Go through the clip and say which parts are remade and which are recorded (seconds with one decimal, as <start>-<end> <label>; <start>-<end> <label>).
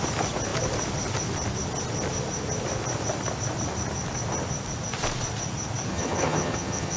0.0-5.9 recorded; 5.9-7.0 remade